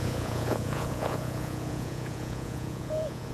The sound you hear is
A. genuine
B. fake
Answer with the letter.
B